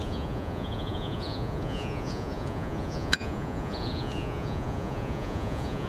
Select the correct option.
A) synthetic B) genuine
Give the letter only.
A